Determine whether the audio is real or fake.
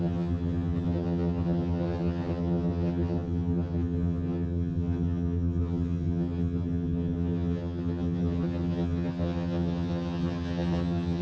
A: fake